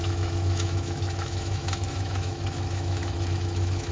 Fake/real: fake